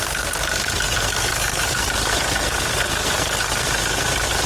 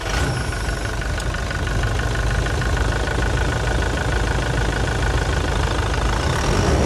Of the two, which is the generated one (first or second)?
first